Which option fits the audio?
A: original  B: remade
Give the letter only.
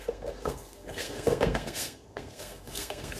B